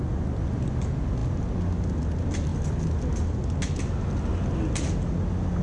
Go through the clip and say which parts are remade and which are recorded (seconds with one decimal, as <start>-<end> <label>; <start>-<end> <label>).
0.0-5.6 recorded